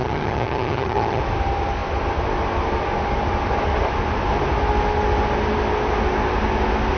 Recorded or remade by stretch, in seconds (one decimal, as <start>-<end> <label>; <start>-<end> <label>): 0.0-1.2 remade; 1.2-7.0 recorded